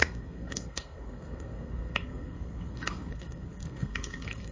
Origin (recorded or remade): remade